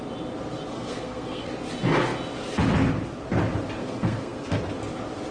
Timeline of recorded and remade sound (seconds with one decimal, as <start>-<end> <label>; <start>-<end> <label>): 0.0-0.7 recorded; 0.7-1.5 remade; 1.5-3.8 recorded; 3.8-4.6 remade; 4.6-5.3 recorded